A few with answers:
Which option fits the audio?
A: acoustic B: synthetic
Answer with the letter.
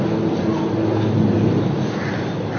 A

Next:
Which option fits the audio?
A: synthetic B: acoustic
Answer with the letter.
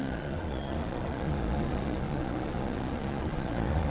A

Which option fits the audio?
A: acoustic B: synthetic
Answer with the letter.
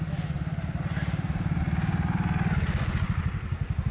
A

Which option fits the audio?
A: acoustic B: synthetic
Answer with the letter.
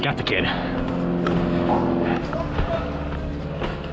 A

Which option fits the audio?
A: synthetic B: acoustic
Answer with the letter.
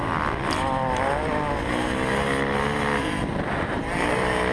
B